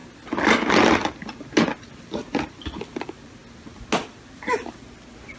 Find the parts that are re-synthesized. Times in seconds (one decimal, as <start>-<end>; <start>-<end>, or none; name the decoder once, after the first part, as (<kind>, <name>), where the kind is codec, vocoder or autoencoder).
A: 1.8-3.4 (vocoder, BigVGAN v2); 4.0-5.4